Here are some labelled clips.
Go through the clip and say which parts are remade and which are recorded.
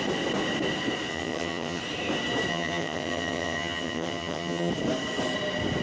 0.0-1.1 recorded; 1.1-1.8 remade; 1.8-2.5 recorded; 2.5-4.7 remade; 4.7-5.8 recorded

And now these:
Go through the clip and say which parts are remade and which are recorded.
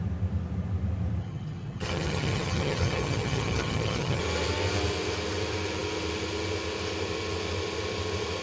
0.0-1.2 recorded; 1.2-4.2 remade; 4.2-8.4 recorded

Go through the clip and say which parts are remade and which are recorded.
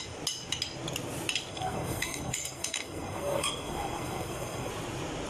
0.0-1.5 recorded; 1.5-4.7 remade; 4.7-5.3 recorded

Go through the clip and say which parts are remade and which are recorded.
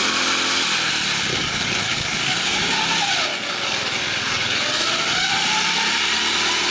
0.0-1.3 recorded; 1.3-2.6 remade; 2.6-3.3 recorded; 3.3-5.3 remade; 5.3-6.7 recorded